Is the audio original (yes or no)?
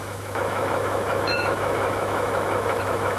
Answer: no